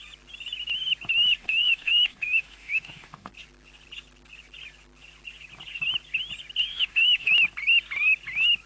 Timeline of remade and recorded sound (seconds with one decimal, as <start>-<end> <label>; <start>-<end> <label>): 0.0-1.4 recorded; 1.4-3.3 remade; 3.3-6.7 recorded; 6.7-7.3 remade; 7.3-8.7 recorded